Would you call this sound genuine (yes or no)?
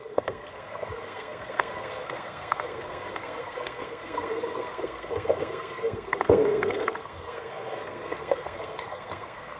no